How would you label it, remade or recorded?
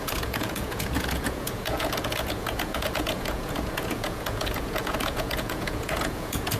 remade